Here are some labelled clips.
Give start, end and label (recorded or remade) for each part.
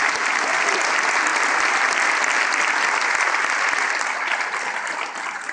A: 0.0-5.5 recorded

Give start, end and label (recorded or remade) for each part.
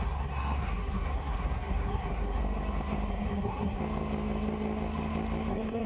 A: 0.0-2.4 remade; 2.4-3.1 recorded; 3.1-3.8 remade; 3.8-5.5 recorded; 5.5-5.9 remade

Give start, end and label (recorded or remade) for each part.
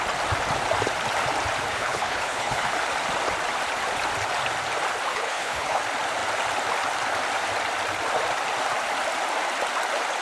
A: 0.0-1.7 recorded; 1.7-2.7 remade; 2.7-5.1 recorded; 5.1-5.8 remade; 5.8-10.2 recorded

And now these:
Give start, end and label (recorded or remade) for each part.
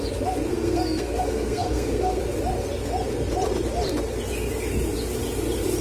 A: 0.0-0.5 recorded; 0.5-2.2 remade; 2.2-5.8 recorded